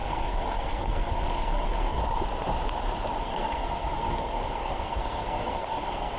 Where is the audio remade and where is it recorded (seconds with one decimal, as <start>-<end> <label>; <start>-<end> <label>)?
0.0-2.0 remade; 2.0-3.2 recorded; 3.2-6.2 remade